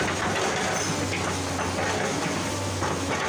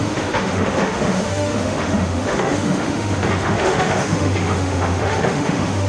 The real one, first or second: first